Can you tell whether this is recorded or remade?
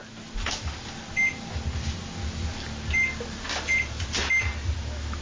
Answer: recorded